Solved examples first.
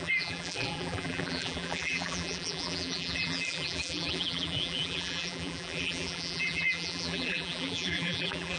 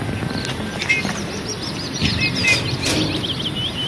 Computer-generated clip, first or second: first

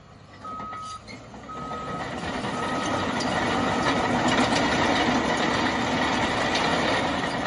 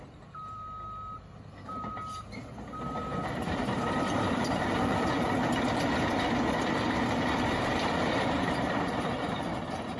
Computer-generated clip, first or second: second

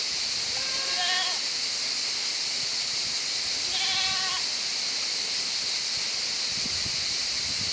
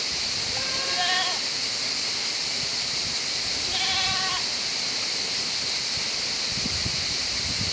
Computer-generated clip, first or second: second